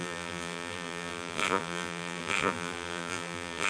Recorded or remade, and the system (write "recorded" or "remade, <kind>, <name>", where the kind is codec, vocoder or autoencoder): remade, vocoder, BigVGAN v2